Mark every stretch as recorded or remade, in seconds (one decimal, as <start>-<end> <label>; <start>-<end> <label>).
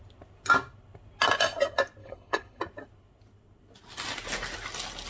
0.0-2.0 recorded; 2.0-2.6 remade; 2.6-5.1 recorded